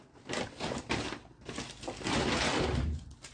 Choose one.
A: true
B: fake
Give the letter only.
A